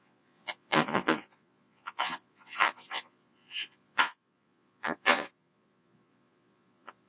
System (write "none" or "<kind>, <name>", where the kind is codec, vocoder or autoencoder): vocoder, Vocos